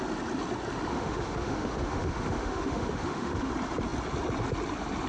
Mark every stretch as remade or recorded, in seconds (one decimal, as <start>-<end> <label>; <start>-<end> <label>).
0.0-0.9 recorded; 0.9-3.5 remade; 3.5-5.1 recorded